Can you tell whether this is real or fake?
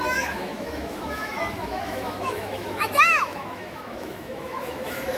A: fake